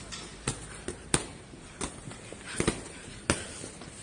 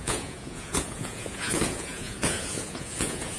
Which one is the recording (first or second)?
first